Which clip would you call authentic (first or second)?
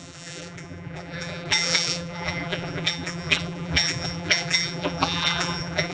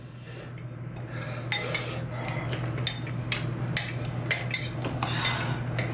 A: second